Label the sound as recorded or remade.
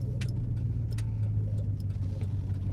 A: recorded